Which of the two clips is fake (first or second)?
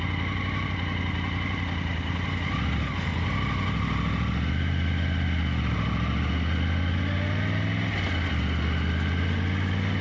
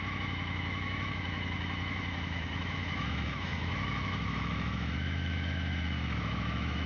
second